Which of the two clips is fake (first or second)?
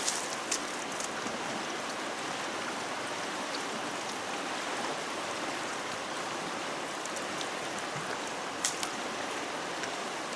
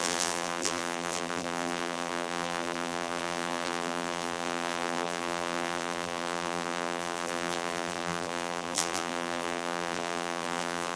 second